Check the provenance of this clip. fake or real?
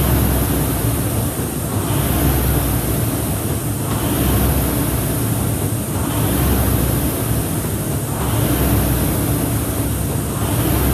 real